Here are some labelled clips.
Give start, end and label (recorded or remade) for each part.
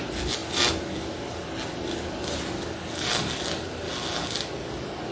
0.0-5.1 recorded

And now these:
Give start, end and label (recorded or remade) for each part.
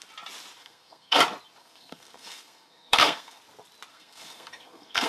0.0-0.6 recorded; 0.6-1.2 remade; 1.2-1.6 recorded; 1.6-3.4 remade; 3.4-3.9 recorded; 3.9-5.1 remade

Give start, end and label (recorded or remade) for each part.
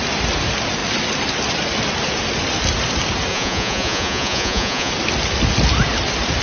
0.0-3.3 recorded; 3.3-4.9 remade; 4.9-6.4 recorded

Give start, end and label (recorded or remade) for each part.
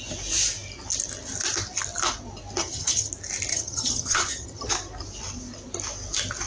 0.0-2.6 recorded; 2.6-3.1 remade; 3.1-3.5 recorded; 3.5-4.7 remade; 4.7-6.5 recorded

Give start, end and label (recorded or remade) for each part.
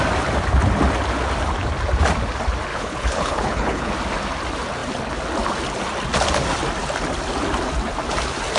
0.0-2.7 recorded; 2.7-3.9 remade; 3.9-8.6 recorded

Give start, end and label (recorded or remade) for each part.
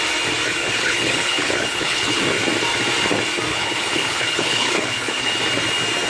0.0-0.6 recorded; 0.6-2.2 remade; 2.2-3.5 recorded; 3.5-5.3 remade; 5.3-6.1 recorded